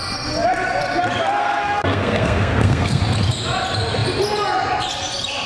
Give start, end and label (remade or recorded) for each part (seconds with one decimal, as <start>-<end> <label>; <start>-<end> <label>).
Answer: 0.0-1.4 recorded; 1.4-3.0 remade; 3.0-5.5 recorded